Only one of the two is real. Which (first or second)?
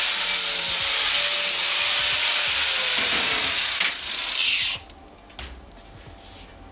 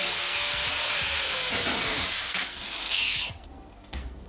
first